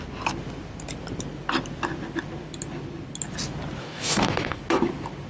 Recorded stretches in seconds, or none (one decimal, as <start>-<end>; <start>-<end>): 0.0-3.8; 4.6-5.3